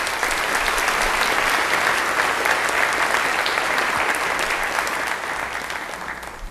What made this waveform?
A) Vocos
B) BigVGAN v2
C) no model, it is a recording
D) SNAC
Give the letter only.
C